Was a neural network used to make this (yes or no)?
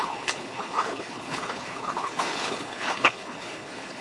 yes